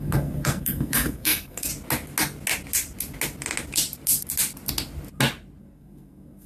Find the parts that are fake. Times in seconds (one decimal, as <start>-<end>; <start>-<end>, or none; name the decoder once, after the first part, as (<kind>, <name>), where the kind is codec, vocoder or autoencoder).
0.0-1.7 (codec, SNAC); 5.6-6.5